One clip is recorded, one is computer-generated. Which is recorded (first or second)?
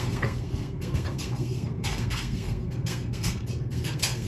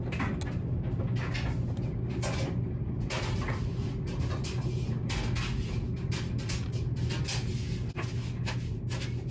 second